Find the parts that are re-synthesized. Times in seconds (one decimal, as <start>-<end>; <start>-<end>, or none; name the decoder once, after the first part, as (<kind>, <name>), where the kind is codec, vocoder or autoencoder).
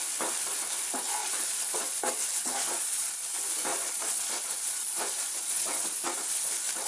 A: 1.2-2.0 (vocoder, Vocos); 2.4-3.2; 3.7-6.5